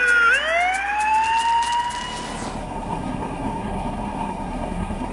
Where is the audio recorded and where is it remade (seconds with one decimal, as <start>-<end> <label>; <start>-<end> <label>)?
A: 0.0-2.6 recorded; 2.6-5.1 remade